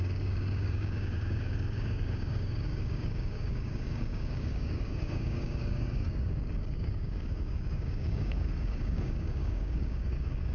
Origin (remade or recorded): remade